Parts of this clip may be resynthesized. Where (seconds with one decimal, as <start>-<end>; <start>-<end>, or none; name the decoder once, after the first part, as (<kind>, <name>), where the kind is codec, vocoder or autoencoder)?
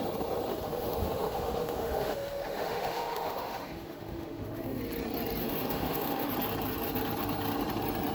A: 0.5-4.8 (autoencoder, DAC-VAE); 5.4-6.3